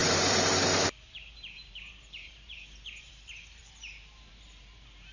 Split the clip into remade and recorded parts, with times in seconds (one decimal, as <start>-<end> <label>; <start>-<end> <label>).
0.0-5.1 remade